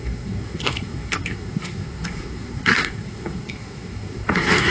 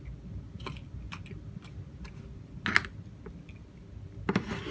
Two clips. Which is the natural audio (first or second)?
second